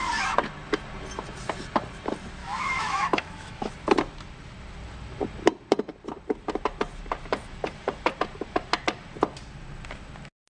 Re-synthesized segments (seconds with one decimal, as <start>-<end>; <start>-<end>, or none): 2.4-3.7